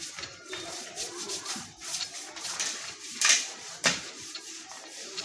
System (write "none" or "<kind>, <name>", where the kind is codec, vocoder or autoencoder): vocoder, BigVGAN v2